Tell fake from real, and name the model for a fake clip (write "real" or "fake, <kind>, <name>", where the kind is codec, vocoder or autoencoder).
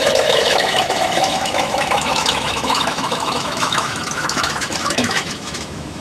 fake, autoencoder, DAC-VAE